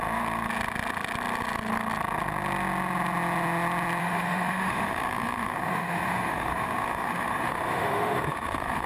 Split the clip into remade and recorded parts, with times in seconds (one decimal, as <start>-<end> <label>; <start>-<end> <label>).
0.0-4.0 recorded; 4.0-8.9 remade